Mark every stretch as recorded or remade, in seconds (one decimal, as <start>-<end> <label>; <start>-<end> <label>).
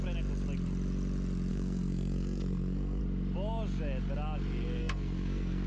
0.0-1.5 recorded; 1.5-3.0 remade; 3.0-4.8 recorded; 4.8-5.7 remade